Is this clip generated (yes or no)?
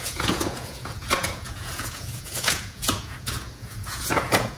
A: yes